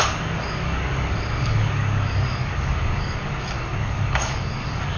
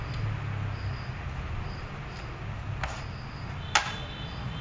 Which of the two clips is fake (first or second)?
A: first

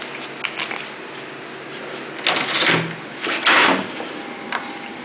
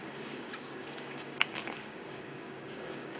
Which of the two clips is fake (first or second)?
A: second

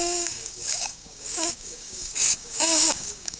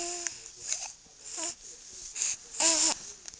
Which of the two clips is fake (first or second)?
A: first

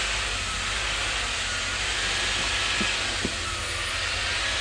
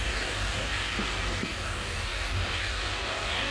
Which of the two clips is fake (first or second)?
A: second